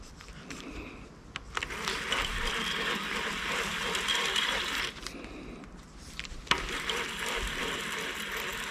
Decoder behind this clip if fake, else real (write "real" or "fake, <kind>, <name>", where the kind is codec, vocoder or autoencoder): real